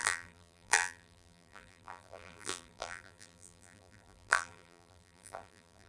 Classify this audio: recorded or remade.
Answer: remade